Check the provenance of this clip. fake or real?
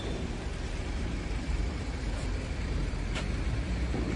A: fake